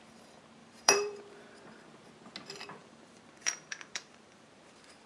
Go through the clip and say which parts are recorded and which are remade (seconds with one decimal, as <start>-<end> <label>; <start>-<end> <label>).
0.0-0.6 recorded; 0.6-1.2 remade; 1.2-2.8 recorded; 2.8-4.5 remade; 4.5-5.1 recorded